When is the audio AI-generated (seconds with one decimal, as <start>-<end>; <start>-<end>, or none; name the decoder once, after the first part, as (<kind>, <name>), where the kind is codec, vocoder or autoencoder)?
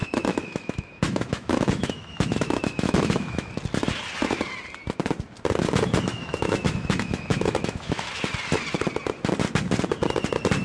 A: 0.0-3.5 (autoencoder, DAC-VAE); 6.1-8.1